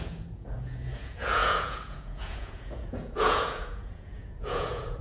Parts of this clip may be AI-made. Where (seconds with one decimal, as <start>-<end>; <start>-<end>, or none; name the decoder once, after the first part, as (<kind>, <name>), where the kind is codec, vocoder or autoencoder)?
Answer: 0.0-5.0 (vocoder, Vocos)